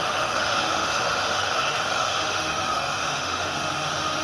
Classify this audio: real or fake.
fake